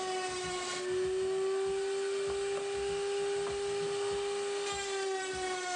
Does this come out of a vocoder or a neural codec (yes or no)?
no